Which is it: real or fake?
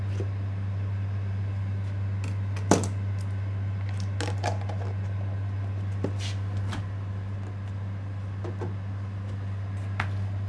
real